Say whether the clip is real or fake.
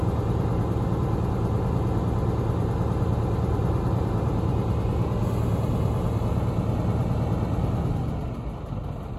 real